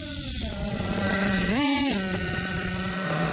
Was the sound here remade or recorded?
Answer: remade